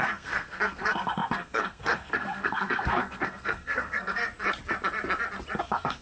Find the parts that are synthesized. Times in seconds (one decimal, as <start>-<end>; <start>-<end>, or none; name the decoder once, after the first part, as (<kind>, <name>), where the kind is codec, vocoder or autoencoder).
0.0-4.2 (codec, SNAC); 5.6-6.0